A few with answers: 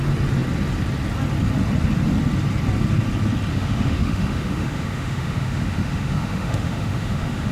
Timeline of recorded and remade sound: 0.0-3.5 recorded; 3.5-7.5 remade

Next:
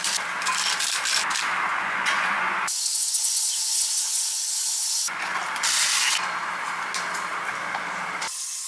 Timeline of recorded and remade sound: 0.0-1.7 recorded; 1.7-5.4 remade; 5.4-8.7 recorded

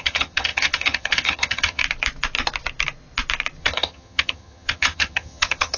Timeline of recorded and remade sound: 0.0-1.8 remade; 1.8-3.6 recorded; 3.6-5.8 remade

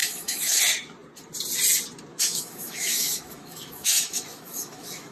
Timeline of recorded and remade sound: 0.0-0.6 remade; 0.6-2.1 recorded; 2.1-5.1 remade

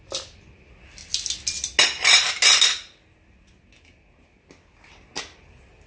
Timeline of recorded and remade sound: 0.0-5.9 recorded

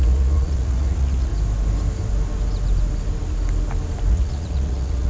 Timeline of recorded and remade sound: 0.0-1.3 remade; 1.3-4.1 recorded; 4.1-5.1 remade

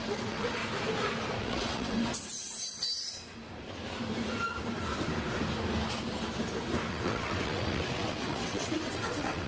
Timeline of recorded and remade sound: 0.0-0.6 remade; 0.6-1.4 recorded; 1.4-2.1 remade; 2.1-6.9 recorded; 6.9-9.5 remade

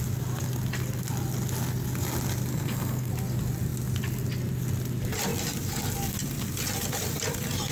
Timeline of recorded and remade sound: 0.0-2.5 recorded; 2.5-3.1 remade; 3.1-7.7 recorded